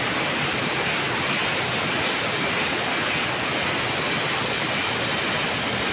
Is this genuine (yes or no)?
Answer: yes